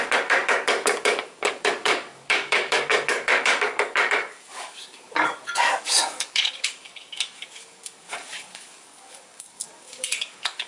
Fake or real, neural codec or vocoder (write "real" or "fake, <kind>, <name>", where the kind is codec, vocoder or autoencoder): fake, codec, DAC